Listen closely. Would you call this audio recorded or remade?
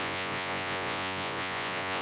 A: remade